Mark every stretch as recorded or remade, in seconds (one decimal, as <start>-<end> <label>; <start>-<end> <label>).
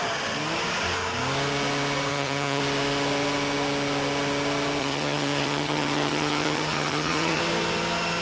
0.0-2.1 recorded; 2.1-2.6 remade; 2.6-4.8 recorded; 4.8-7.4 remade; 7.4-8.2 recorded